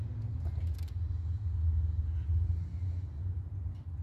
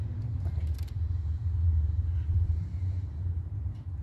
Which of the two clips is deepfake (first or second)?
second